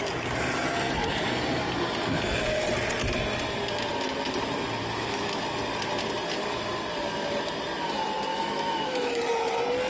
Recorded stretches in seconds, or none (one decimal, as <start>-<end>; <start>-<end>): 0.0-4.8; 5.4-8.3; 9.2-9.9